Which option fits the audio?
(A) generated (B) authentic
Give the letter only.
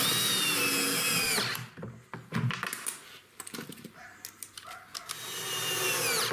B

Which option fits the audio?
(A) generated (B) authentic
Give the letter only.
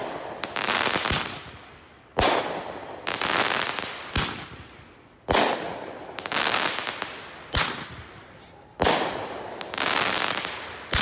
B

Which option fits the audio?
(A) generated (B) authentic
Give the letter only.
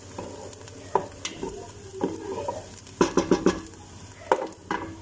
B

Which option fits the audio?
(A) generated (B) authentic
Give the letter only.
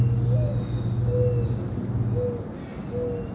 B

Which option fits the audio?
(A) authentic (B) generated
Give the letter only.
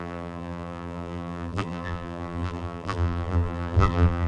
B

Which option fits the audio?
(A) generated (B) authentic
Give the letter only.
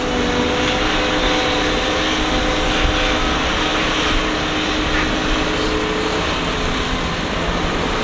B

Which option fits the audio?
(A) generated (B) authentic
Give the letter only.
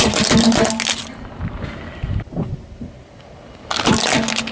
B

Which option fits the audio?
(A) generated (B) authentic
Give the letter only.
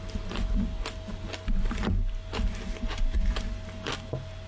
B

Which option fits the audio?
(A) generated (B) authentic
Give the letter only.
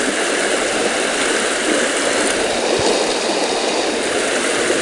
B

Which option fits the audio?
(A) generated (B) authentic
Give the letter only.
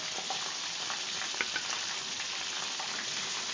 B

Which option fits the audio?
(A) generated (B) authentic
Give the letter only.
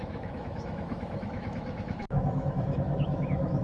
A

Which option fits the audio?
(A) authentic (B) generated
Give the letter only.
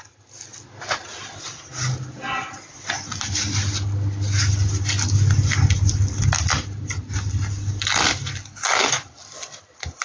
A